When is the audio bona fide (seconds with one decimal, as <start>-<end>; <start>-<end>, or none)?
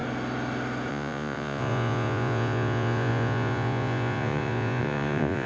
0.0-0.9